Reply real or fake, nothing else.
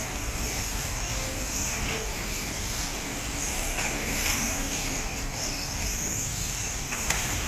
fake